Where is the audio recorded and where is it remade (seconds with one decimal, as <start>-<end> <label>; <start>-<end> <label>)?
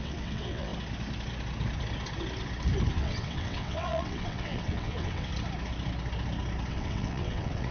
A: 0.0-0.7 remade; 0.7-2.9 recorded; 2.9-5.3 remade; 5.3-6.7 recorded; 6.7-7.7 remade